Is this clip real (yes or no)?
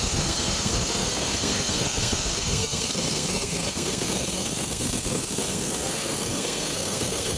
no